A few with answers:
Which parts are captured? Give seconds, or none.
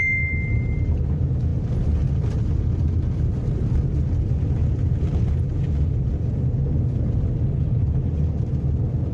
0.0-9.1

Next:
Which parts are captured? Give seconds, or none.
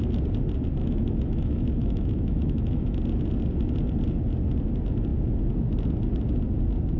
0.0-0.8; 3.0-7.0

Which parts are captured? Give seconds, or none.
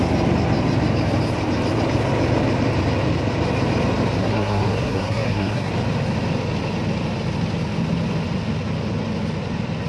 0.0-4.2; 5.7-9.9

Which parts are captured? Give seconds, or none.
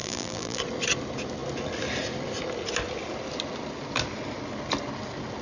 0.6-5.4